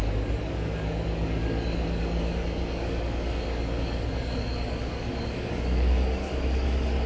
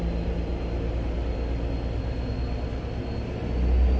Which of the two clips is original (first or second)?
second